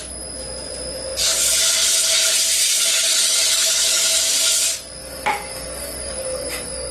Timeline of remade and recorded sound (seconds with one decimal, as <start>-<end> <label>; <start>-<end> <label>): 0.0-2.6 recorded; 2.6-4.2 remade; 4.2-5.0 recorded; 5.0-6.9 remade